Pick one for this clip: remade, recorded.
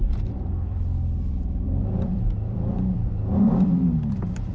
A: remade